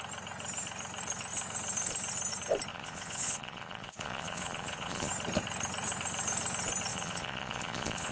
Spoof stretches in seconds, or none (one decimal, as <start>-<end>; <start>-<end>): 2.7-5.1; 6.9-8.1